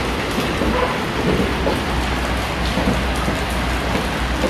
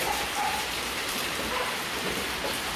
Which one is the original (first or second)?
first